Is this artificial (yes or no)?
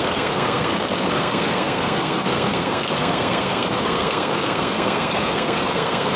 yes